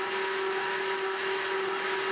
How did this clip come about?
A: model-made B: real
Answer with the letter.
B